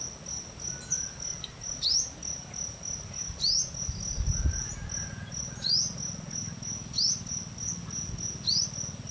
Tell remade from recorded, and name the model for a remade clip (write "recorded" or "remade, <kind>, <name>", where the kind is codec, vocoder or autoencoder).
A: recorded